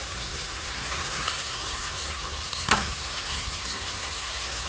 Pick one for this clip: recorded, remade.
remade